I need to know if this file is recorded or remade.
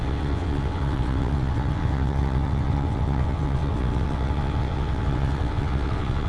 remade